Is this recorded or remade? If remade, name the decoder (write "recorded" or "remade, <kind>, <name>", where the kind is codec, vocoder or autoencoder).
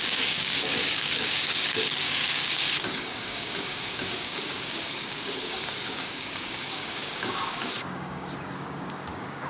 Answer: remade, codec, DAC